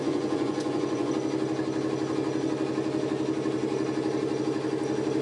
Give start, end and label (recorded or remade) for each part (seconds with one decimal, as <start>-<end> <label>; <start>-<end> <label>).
0.0-1.1 remade; 1.1-5.2 recorded